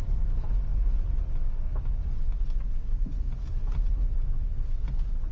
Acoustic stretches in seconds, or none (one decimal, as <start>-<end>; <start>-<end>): 0.0-5.3